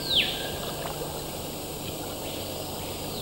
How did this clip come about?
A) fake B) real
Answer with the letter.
B